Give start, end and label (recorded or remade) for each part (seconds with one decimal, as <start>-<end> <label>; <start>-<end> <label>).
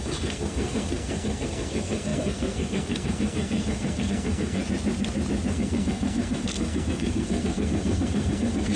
0.0-4.6 remade; 4.6-5.5 recorded; 5.5-8.8 remade